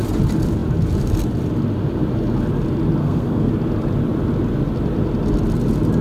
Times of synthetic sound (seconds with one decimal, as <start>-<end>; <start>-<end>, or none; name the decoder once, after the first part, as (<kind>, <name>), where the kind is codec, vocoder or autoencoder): 3.0-3.5 (codec, SNAC)